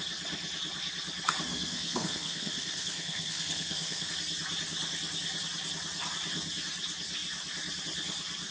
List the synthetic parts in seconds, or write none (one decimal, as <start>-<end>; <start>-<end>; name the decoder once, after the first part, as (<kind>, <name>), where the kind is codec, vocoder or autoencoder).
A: 1.5-4.1 (codec, SNAC)